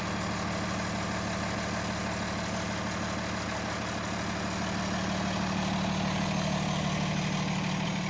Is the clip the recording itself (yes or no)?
yes